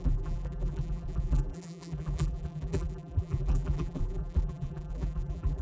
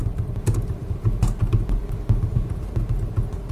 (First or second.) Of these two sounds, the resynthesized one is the first